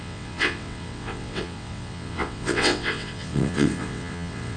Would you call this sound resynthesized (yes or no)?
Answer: yes